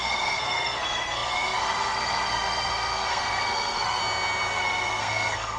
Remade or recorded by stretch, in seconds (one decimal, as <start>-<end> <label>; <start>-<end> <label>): 0.0-4.0 remade; 4.0-4.5 recorded; 4.5-5.6 remade